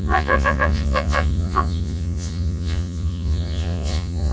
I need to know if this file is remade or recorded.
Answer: remade